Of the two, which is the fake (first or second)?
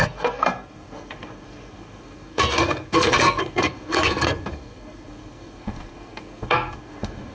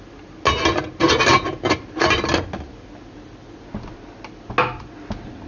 first